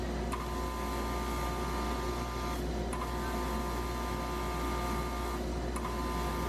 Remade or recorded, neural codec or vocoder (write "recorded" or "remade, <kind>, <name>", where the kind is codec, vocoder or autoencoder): recorded